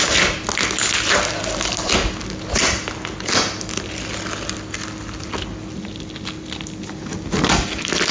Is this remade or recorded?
recorded